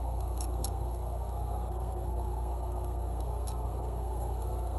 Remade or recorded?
remade